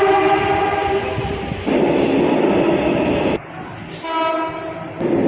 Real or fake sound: real